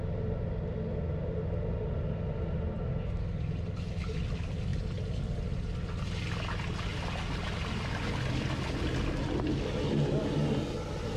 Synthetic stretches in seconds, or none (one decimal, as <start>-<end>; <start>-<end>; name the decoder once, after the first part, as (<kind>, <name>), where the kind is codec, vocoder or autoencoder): none